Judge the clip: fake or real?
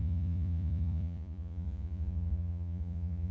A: fake